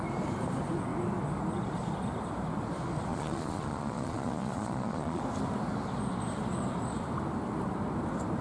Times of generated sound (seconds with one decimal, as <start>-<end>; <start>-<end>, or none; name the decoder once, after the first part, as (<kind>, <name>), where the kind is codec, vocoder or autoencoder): 3.1-5.2 (vocoder, Vocos)